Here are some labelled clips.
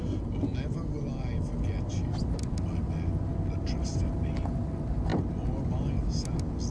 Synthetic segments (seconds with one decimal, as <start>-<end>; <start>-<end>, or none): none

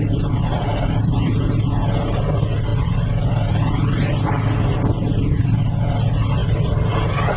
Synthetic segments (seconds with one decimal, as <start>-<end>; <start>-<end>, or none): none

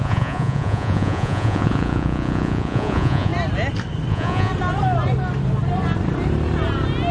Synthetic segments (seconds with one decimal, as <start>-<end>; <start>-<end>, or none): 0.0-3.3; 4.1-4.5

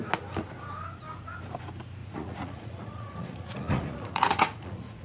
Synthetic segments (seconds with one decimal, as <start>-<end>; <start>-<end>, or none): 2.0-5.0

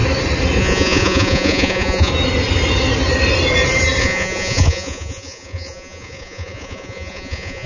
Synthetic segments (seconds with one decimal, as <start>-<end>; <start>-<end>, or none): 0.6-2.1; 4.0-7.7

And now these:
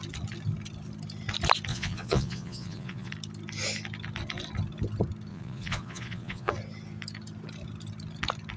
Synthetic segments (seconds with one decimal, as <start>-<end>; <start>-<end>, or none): 1.7-3.1; 5.3-6.5

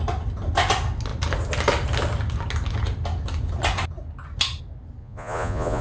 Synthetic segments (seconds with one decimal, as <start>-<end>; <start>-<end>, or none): 5.0-5.8